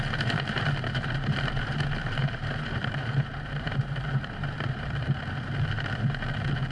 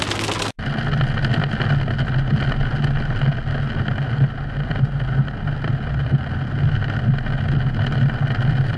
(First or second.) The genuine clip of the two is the second